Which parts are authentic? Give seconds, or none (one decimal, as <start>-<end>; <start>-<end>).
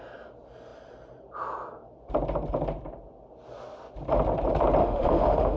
0.0-4.8